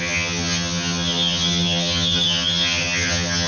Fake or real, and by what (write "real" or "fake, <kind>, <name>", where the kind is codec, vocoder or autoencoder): fake, vocoder, HiFi-GAN